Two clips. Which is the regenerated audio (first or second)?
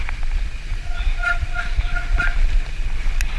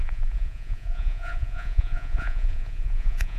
second